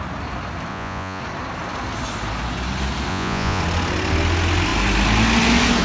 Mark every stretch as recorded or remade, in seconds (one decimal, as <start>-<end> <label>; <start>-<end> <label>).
0.0-0.7 recorded; 0.7-1.2 remade; 1.2-3.1 recorded; 3.1-3.6 remade; 3.6-5.8 recorded